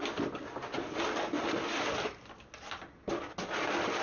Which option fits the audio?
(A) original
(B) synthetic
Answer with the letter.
A